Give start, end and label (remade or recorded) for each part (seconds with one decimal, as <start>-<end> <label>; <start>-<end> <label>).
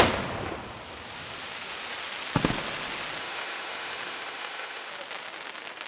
0.0-3.2 recorded; 3.2-4.9 remade; 4.9-5.9 recorded